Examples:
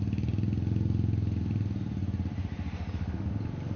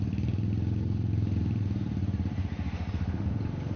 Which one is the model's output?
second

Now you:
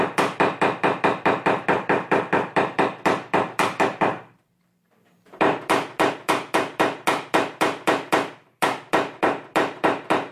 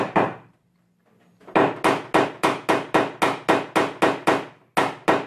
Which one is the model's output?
first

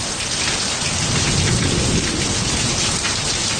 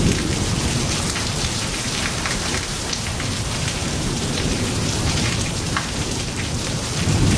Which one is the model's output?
second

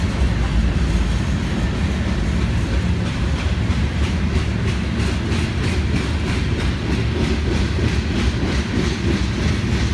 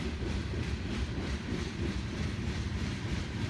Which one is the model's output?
second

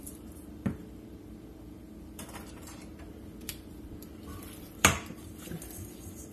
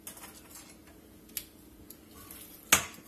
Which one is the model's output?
first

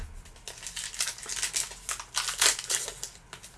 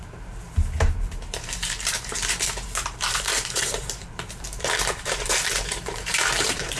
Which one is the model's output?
second